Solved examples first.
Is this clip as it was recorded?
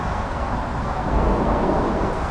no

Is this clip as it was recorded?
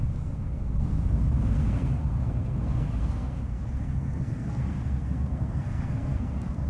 no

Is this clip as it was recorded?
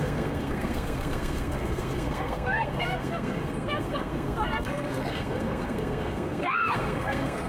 no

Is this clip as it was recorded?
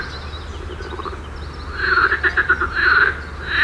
yes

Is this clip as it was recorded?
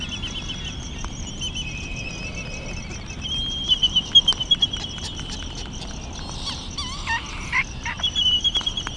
yes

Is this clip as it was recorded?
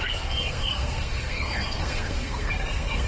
no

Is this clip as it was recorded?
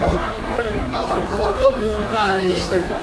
no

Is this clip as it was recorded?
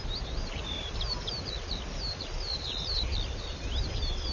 yes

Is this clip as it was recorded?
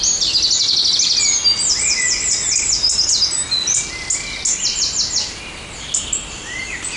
yes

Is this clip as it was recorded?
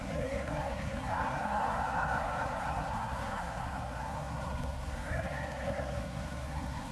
no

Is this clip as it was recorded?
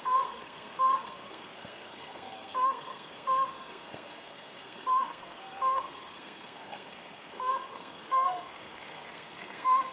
no